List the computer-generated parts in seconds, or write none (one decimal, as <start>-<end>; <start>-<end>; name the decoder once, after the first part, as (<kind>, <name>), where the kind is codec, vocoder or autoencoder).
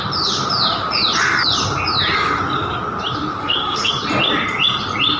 3.4-3.9 (codec, SNAC)